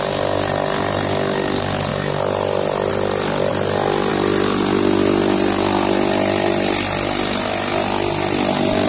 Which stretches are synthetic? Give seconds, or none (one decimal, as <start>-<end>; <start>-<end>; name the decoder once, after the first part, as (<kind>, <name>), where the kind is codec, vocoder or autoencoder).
none